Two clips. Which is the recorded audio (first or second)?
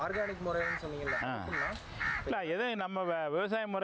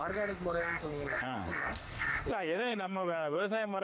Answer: first